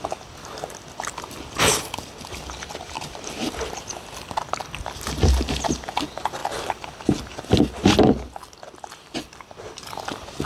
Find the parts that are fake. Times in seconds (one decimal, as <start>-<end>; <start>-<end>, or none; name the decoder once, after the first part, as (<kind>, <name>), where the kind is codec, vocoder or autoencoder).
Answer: none

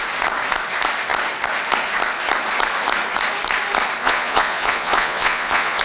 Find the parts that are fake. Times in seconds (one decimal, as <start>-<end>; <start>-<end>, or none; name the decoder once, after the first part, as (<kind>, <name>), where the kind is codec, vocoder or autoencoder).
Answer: 4.0-5.8 (vocoder, Vocos)

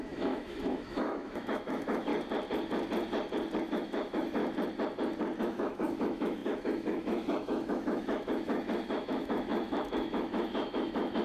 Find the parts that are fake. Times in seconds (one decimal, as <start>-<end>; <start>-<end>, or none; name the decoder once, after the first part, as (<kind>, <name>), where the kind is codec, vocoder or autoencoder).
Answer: 0.0-2.1 (autoencoder, DAC-VAE); 3.6-4.4; 5.4-11.2